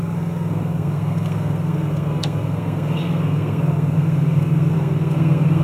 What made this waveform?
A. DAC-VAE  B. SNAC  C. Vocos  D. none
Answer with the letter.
B